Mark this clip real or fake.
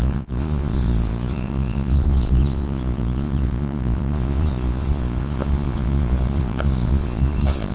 fake